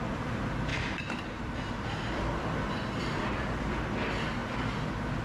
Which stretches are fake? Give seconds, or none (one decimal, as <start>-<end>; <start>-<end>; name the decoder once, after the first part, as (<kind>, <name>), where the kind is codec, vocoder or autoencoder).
0.7-3.8 (vocoder, BigVGAN v2)